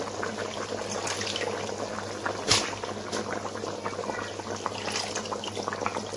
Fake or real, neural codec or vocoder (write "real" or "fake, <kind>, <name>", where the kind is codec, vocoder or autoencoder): real